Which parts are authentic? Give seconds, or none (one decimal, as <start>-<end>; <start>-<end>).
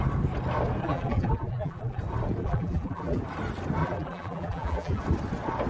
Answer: 0.0-0.8; 2.0-2.4; 3.2-3.8; 5.0-5.7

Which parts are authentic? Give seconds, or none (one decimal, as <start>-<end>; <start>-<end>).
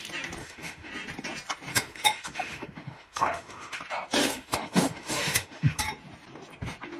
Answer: 0.0-0.4; 0.9-1.7; 3.8-4.2; 5.8-7.0